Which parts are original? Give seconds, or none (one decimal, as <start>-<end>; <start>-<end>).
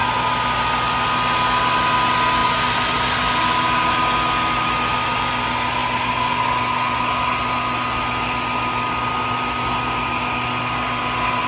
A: 0.0-11.5